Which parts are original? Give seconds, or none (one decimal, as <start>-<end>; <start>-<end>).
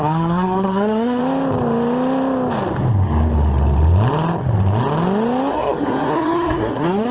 1.2-5.5